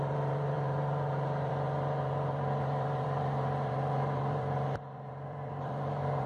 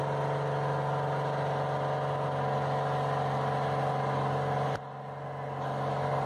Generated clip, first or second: first